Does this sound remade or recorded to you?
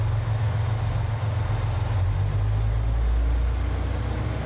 recorded